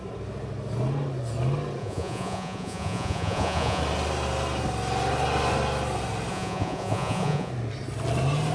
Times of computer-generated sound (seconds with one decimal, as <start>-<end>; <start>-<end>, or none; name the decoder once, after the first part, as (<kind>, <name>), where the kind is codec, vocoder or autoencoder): 1.8-3.8 (vocoder, Vocos); 6.3-7.5